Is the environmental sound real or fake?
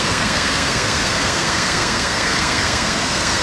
fake